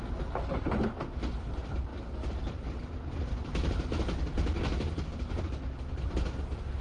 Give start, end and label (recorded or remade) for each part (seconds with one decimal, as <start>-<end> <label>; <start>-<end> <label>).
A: 0.0-6.8 recorded